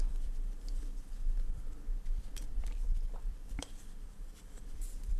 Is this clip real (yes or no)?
no